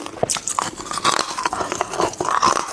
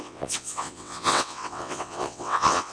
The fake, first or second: second